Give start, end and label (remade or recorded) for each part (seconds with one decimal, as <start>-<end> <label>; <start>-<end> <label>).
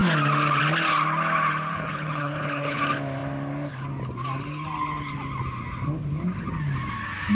0.0-1.7 recorded; 1.7-2.8 remade; 2.8-7.3 recorded